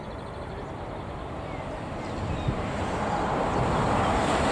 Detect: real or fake real